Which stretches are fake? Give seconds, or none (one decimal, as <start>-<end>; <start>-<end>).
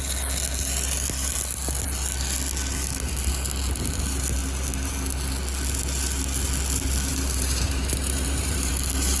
7.1-8.7